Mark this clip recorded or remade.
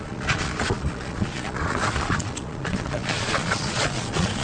remade